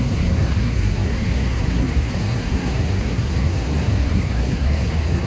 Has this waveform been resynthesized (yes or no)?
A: yes